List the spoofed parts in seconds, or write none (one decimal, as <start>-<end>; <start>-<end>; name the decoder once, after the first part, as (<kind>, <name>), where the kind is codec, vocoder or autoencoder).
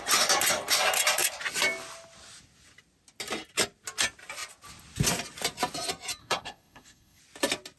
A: 6.2-7.2 (codec, SNAC)